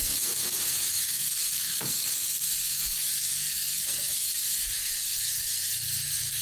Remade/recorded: remade